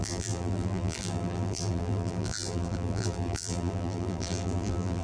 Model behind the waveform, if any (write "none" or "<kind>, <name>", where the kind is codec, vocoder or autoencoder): vocoder, BigVGAN v2